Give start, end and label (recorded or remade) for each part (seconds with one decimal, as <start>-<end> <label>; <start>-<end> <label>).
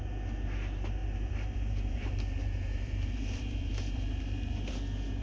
0.0-1.0 recorded; 1.0-4.1 remade; 4.1-5.2 recorded